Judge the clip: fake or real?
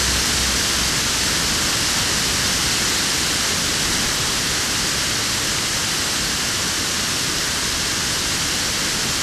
real